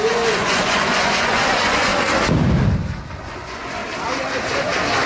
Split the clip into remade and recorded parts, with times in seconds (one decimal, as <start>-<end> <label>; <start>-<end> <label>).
0.0-1.9 remade; 1.9-3.2 recorded; 3.2-3.8 remade; 3.8-5.1 recorded